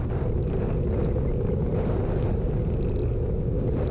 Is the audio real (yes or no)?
yes